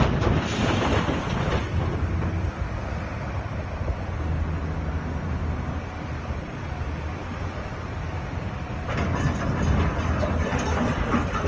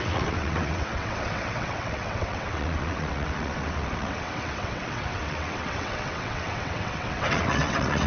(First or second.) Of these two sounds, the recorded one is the first